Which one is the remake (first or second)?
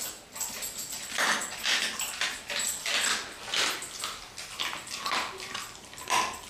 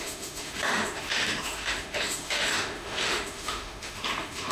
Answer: second